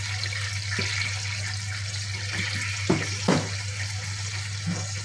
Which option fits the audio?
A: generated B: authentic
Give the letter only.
B